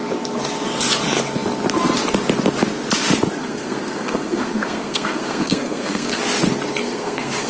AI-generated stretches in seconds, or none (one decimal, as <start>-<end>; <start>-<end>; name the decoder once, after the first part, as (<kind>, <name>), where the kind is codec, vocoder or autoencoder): 3.4-6.2 (codec, SNAC); 6.8-7.5